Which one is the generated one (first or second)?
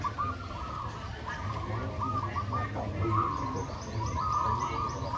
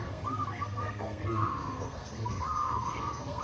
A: second